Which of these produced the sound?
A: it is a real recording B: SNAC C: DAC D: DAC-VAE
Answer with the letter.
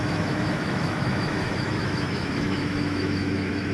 D